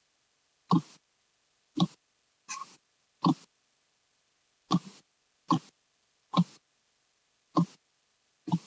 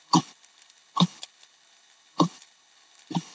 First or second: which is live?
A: first